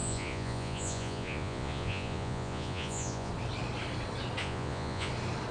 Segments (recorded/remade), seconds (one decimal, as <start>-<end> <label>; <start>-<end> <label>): 0.0-3.3 remade; 3.3-4.4 recorded; 4.4-5.1 remade; 5.1-5.5 recorded